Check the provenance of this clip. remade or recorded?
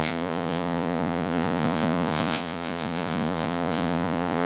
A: remade